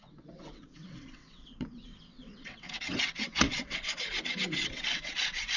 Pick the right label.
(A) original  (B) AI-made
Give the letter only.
B